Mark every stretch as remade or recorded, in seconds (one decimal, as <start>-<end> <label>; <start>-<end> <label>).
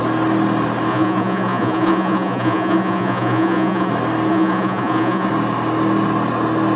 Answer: 0.0-0.9 recorded; 0.9-3.9 remade; 3.9-4.3 recorded; 4.3-5.3 remade; 5.3-6.8 recorded